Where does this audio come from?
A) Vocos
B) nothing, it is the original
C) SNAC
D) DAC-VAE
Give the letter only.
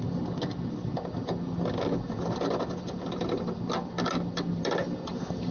B